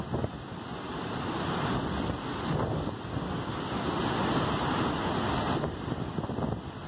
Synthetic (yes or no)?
no